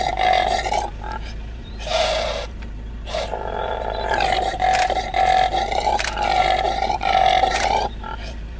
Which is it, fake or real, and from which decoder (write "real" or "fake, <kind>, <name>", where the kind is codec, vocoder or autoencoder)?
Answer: fake, vocoder, BigVGAN v2